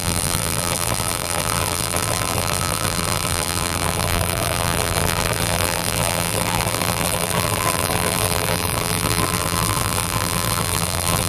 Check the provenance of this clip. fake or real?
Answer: fake